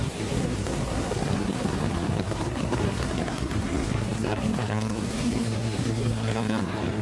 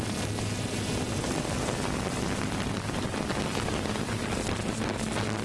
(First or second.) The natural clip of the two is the second